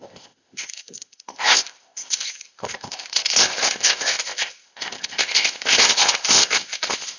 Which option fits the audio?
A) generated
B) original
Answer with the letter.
A